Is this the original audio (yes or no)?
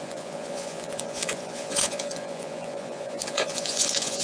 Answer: no